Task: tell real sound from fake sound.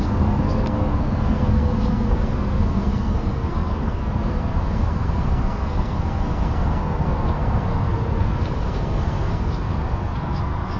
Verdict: fake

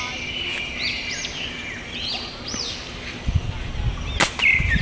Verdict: real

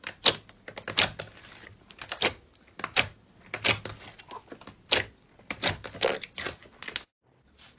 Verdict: real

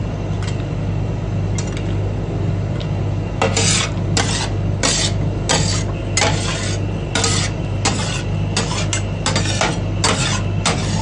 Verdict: real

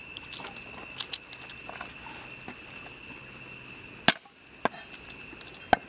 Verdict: real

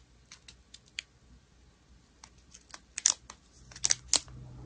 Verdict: real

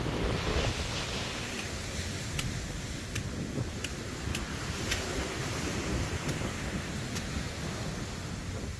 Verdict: real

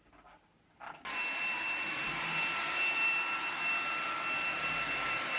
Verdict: real